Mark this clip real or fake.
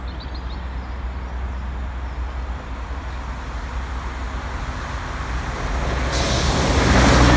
real